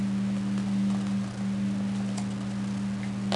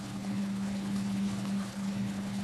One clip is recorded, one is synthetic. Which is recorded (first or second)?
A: first